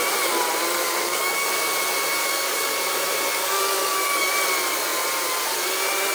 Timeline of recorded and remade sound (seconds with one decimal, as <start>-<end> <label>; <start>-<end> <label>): 0.0-0.8 recorded; 0.8-1.5 remade; 1.5-2.2 recorded; 2.2-2.8 remade; 2.8-3.3 recorded; 3.3-4.3 remade; 4.3-6.1 recorded